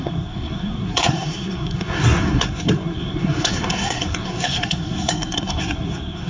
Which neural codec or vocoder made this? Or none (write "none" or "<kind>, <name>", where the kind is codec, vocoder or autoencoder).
codec, SNAC